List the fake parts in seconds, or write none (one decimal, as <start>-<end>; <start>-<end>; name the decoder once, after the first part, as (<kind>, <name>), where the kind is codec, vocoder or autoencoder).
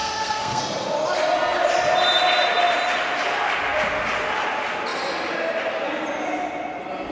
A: 0.0-0.6 (codec, SNAC)